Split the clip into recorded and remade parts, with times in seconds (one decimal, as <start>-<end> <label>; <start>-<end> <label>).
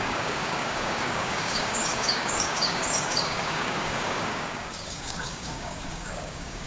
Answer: 0.0-6.7 remade